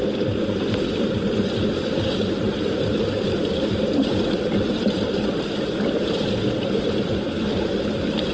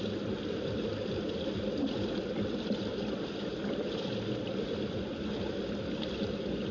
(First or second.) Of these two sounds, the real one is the second